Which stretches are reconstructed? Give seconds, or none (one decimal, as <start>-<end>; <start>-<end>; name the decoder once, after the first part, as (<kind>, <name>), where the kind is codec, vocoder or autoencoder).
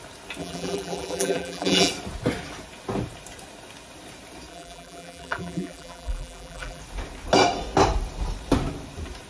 0.4-1.9 (vocoder, BigVGAN v2); 4.5-6.8